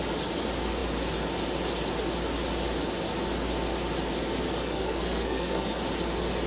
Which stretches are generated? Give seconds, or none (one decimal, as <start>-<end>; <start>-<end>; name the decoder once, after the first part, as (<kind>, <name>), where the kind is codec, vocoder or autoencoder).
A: 4.6-5.8 (codec, SNAC)